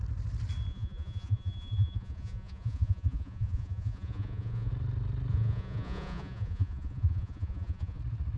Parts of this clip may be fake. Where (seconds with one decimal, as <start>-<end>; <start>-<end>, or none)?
0.7-4.7; 5.3-8.0